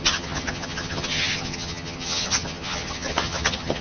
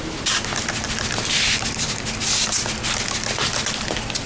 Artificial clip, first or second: first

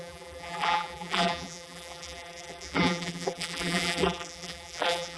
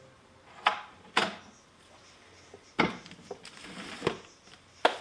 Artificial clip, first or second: first